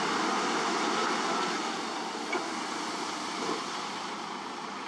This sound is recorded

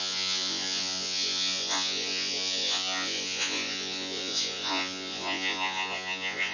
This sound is remade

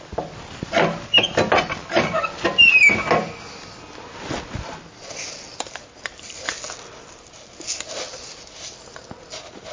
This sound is recorded